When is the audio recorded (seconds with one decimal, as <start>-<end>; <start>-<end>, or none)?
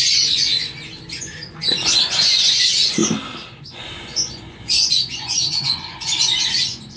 0.5-1.2; 3.0-3.6